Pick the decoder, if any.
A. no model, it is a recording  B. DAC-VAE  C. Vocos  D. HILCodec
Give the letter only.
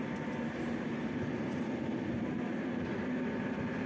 A